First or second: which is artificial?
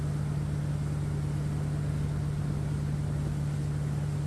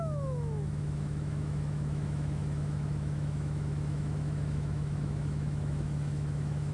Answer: second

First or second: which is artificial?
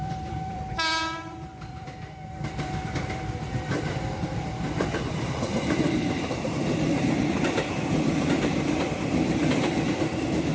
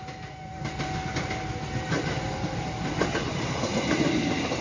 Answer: first